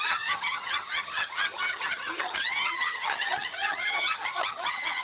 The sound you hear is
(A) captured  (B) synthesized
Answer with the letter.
B